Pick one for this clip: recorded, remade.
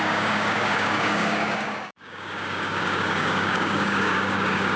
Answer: remade